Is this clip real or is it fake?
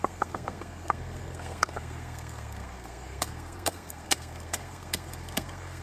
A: fake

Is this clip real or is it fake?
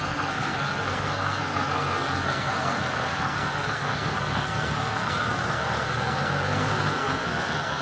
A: fake